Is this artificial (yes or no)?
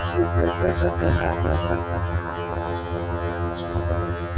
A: yes